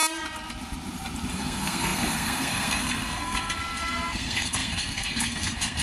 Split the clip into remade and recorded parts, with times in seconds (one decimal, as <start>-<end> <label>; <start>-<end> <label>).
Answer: 0.0-1.3 recorded; 1.3-5.8 remade